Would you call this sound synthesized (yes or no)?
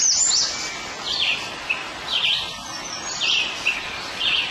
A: no